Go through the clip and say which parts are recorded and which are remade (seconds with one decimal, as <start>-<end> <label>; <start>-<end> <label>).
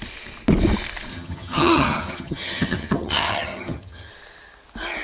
0.0-1.1 recorded; 1.1-4.1 remade; 4.1-5.0 recorded